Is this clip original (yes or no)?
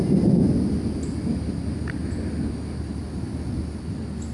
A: yes